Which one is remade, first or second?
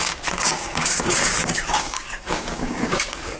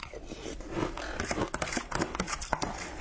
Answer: first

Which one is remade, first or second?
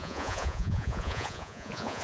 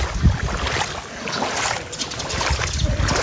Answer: first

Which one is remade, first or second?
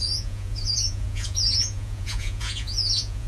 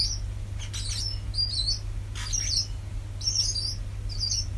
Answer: first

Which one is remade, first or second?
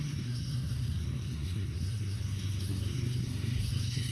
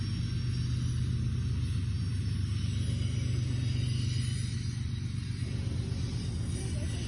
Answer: first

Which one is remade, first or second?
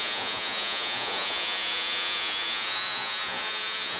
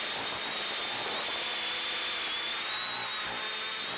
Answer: first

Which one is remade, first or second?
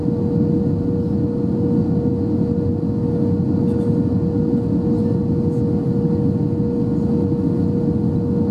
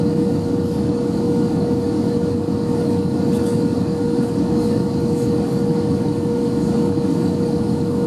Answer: second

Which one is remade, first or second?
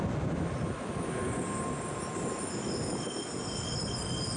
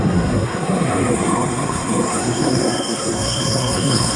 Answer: second